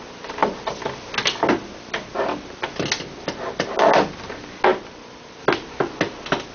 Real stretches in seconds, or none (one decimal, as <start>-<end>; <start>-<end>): 0.0-6.5